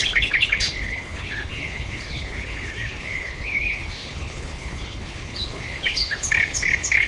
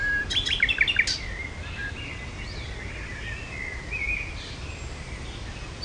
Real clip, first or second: second